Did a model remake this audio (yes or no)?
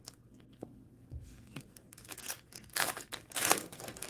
yes